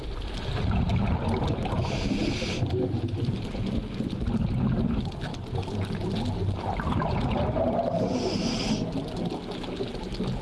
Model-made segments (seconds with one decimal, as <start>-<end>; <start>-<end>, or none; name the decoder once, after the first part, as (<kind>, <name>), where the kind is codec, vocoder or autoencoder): none